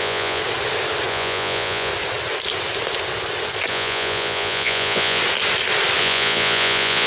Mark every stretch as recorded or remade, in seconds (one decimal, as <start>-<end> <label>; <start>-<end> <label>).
0.0-0.4 remade; 0.4-1.1 recorded; 1.1-1.9 remade; 1.9-3.7 recorded; 3.7-5.2 remade; 5.2-6.0 recorded; 6.0-7.1 remade